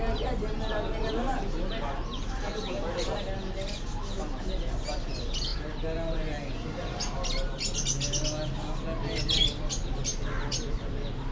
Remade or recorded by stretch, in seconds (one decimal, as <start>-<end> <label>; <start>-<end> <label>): 0.0-11.3 recorded